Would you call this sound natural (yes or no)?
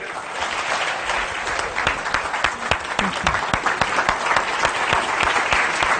yes